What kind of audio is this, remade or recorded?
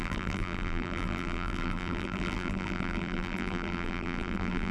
remade